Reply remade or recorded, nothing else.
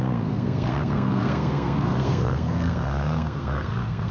remade